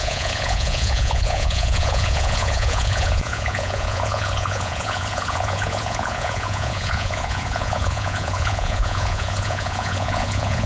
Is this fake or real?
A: fake